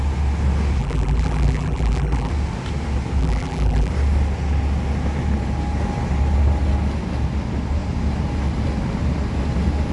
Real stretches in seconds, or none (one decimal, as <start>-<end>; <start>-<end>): 0.0-0.8; 2.3-3.2; 3.9-9.9